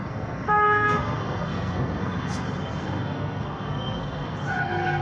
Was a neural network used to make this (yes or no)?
yes